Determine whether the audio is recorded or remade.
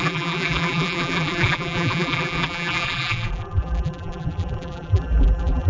remade